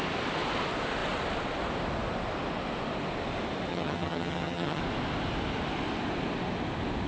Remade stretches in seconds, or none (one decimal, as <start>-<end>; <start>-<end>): 3.7-4.8